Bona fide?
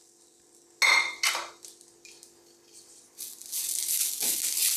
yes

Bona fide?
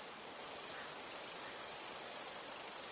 yes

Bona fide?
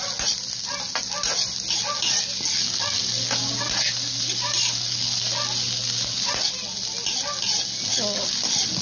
yes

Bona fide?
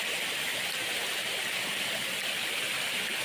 yes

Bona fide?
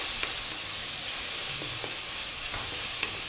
no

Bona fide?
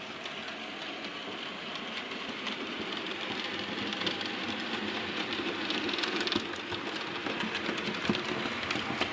yes